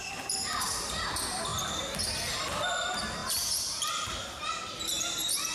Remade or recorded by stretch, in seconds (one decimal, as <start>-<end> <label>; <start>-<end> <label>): 0.0-3.2 remade; 3.2-3.8 recorded; 3.8-5.5 remade